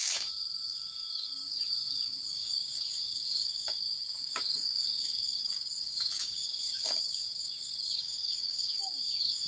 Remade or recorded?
remade